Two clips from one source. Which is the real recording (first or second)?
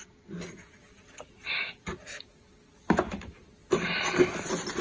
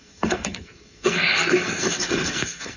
first